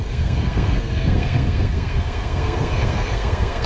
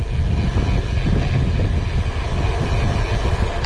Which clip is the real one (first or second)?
second